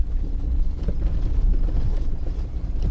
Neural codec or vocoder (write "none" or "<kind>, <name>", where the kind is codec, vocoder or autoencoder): none